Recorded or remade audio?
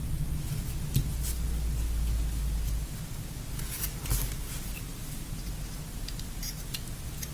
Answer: recorded